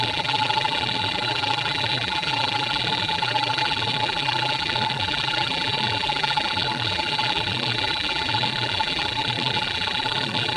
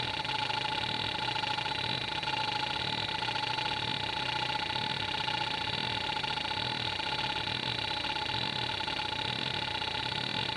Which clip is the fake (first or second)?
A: first